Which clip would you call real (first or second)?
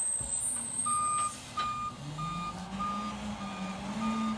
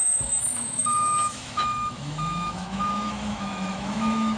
first